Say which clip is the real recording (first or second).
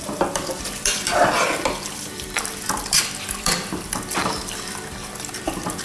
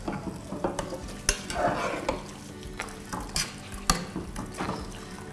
second